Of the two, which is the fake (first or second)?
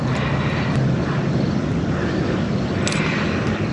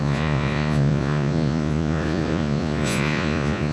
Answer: second